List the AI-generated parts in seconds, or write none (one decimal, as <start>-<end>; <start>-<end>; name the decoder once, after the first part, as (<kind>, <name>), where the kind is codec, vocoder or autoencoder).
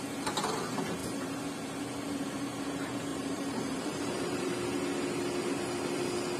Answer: 3.1-4.5 (vocoder, BigVGAN v2)